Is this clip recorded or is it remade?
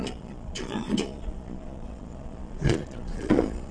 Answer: remade